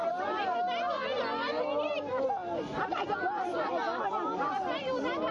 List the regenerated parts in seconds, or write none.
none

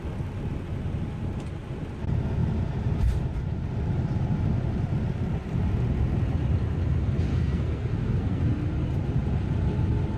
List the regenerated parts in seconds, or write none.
7.3-8.4 (codec, SNAC)

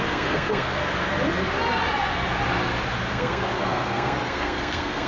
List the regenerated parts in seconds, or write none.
0.0-0.8 (codec, SNAC); 3.1-5.1

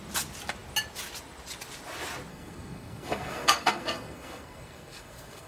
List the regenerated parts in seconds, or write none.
2.3-5.5 (codec, SNAC)